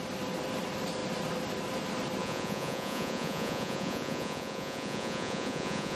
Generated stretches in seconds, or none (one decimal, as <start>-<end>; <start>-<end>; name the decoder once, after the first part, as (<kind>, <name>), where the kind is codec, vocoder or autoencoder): 2.2-6.0 (vocoder, Vocos)